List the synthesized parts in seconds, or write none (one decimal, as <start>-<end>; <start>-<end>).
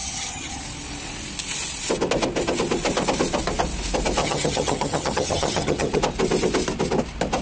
0.0-0.6; 4.2-6.0